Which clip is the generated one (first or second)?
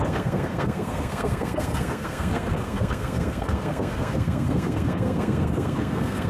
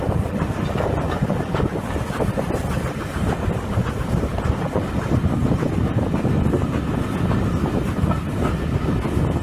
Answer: first